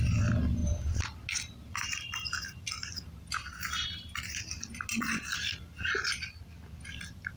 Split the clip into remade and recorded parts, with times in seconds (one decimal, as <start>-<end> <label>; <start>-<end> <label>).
0.0-7.4 recorded